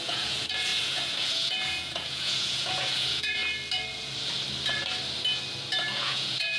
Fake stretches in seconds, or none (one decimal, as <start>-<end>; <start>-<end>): 0.0-3.4; 5.8-6.6